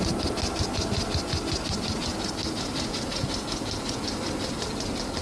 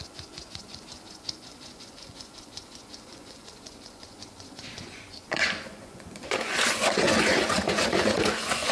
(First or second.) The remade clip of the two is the second